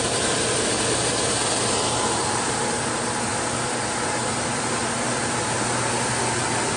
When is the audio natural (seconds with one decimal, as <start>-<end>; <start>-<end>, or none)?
0.0-6.8